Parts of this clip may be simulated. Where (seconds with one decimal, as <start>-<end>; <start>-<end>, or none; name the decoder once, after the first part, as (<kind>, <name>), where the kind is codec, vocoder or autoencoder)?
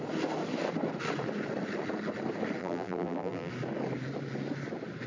2.6-3.5 (vocoder, BigVGAN v2)